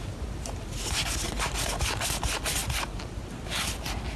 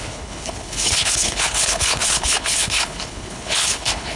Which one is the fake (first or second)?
second